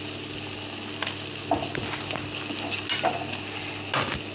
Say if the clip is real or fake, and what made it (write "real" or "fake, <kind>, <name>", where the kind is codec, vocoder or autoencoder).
real